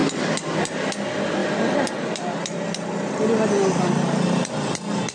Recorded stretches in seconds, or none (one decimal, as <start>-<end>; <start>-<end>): 0.0-5.1